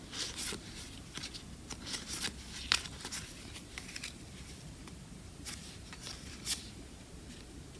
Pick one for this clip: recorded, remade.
recorded